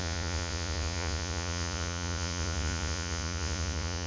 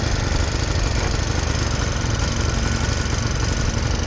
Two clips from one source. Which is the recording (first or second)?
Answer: second